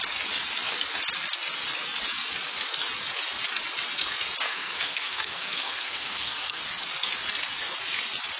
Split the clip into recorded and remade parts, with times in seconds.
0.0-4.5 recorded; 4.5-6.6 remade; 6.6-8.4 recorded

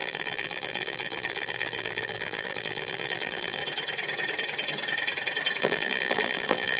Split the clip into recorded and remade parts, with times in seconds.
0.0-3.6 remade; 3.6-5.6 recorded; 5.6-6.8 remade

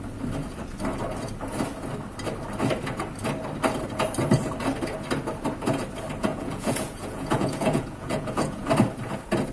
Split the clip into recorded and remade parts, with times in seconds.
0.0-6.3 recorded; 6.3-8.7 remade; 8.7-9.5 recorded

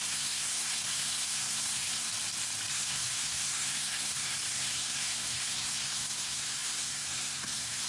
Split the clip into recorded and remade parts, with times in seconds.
0.0-2.1 remade; 2.1-2.7 recorded; 2.7-7.9 remade

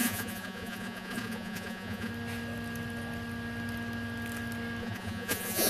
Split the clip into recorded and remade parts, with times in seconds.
0.0-2.1 remade; 2.1-4.8 recorded; 4.8-5.7 remade